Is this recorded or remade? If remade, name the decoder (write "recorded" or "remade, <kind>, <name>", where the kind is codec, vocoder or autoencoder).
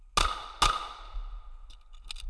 recorded